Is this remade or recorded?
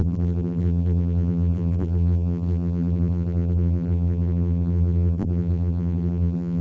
remade